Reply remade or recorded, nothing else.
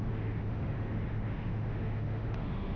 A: remade